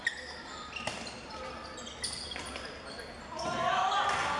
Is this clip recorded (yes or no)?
yes